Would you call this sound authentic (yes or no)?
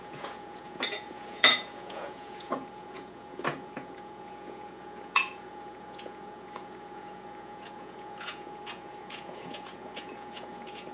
no